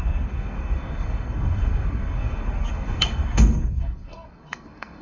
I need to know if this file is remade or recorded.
remade